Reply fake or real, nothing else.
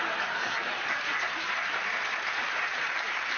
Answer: fake